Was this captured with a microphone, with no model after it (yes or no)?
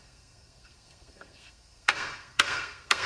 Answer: no